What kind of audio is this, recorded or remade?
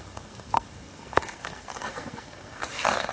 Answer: remade